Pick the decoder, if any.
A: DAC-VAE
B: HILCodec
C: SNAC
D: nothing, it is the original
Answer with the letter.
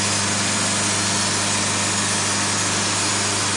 D